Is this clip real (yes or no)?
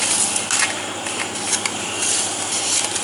yes